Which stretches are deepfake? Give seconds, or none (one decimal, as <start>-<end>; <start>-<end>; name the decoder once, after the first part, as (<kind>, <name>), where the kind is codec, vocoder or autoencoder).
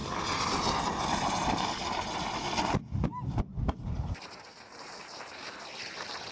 3.5-5.6 (vocoder, BigVGAN v2)